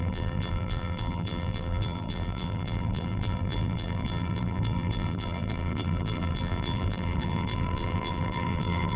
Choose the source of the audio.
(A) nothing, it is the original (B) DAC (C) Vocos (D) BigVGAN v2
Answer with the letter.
D